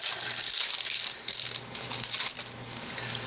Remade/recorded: recorded